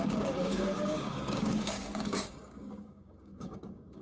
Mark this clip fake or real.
fake